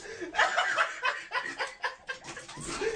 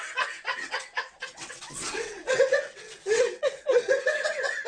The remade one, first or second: second